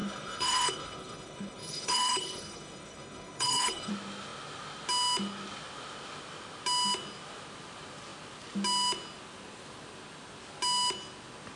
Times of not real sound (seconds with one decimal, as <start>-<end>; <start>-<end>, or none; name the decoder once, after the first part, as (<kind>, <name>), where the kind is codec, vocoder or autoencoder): 0.0-3.9 (codec, HILCodec)